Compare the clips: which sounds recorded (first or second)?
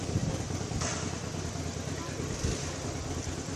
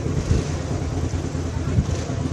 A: second